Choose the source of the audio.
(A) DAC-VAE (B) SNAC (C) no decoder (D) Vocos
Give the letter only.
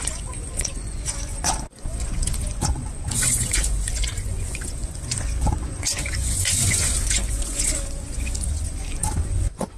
D